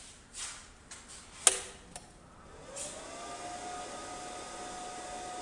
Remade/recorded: recorded